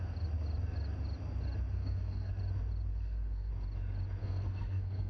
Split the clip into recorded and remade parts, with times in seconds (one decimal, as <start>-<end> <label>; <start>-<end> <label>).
0.0-1.7 recorded; 1.7-2.3 remade; 2.3-2.9 recorded; 2.9-3.5 remade; 3.5-4.2 recorded; 4.2-5.1 remade